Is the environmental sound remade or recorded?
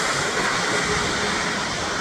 recorded